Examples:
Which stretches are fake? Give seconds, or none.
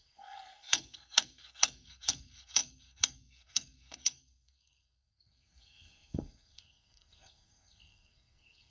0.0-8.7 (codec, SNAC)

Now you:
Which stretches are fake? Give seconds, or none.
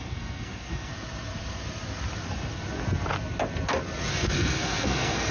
0.0-0.9 (codec, SNAC); 4.1-5.3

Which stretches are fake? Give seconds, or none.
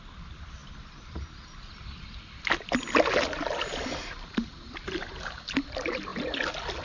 none